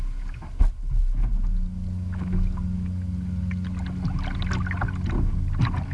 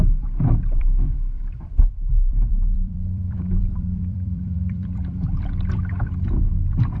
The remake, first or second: second